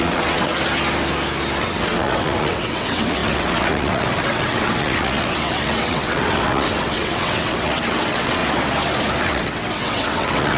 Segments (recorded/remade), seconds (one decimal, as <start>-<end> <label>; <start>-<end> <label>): 0.0-0.5 remade; 0.5-1.6 recorded; 1.6-8.4 remade; 8.4-9.2 recorded; 9.2-10.6 remade

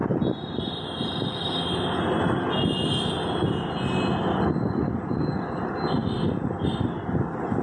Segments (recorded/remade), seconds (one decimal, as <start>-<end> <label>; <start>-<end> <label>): 0.0-7.6 recorded

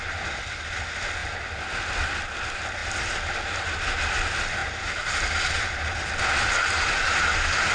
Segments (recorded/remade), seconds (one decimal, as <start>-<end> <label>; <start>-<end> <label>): 0.0-7.7 recorded

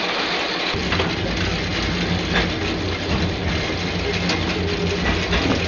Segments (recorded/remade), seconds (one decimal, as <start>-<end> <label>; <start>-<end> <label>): 0.0-5.7 recorded

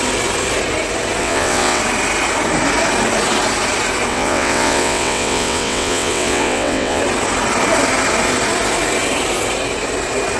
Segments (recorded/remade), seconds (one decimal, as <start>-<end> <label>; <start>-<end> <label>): 0.0-1.2 recorded; 1.2-1.8 remade; 1.8-4.1 recorded; 4.1-7.0 remade; 7.0-10.4 recorded